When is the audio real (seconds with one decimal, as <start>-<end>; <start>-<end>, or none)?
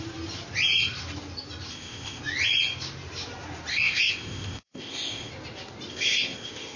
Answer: 0.0-1.7; 2.2-3.7; 5.3-5.9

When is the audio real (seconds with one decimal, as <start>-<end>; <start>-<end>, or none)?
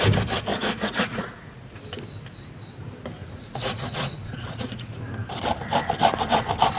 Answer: 0.0-0.5; 1.8-3.2; 5.0-6.8